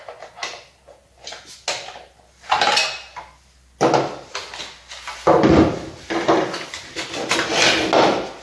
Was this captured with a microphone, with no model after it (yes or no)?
yes